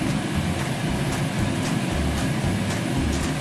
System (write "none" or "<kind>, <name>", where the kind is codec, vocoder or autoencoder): none